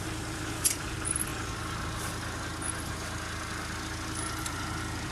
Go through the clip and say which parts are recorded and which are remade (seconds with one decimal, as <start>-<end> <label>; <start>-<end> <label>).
0.0-1.3 remade; 1.3-4.4 recorded; 4.4-5.1 remade